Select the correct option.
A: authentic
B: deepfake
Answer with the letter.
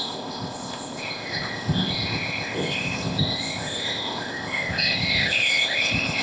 B